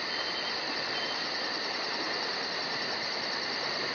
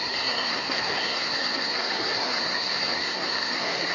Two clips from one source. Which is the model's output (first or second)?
second